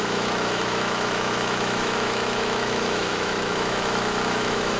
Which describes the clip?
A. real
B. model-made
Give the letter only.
B